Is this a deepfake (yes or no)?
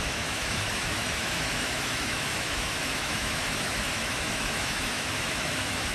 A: yes